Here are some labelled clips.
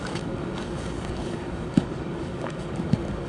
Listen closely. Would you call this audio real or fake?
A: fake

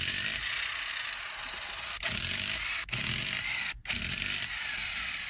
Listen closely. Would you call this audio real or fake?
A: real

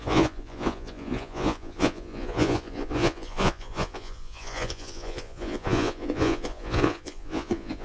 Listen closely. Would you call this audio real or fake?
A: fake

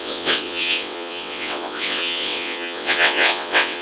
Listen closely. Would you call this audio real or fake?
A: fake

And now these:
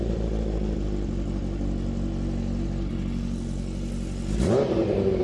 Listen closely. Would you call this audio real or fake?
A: real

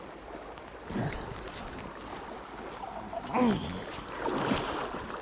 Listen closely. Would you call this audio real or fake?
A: real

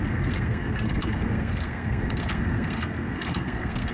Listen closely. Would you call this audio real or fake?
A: fake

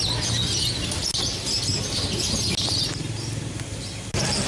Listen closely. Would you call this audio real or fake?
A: real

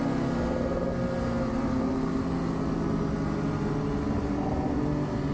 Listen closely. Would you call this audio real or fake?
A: real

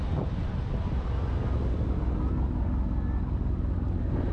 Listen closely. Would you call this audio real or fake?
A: real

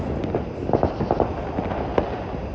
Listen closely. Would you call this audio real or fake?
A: real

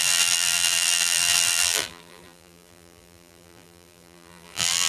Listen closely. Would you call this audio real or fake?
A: fake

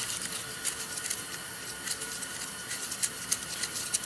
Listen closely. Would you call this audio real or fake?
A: real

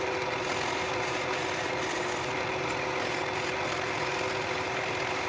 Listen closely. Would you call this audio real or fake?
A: real